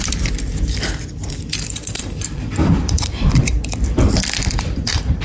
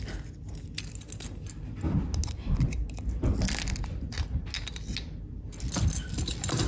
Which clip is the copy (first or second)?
first